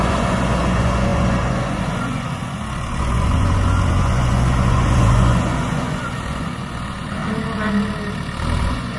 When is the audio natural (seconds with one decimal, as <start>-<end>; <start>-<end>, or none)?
7.2-8.6